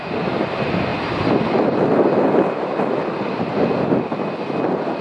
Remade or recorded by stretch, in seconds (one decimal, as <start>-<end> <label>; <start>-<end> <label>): 0.0-5.0 recorded